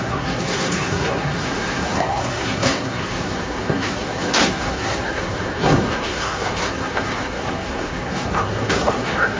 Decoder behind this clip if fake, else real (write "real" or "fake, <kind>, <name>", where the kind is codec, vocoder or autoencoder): fake, codec, SNAC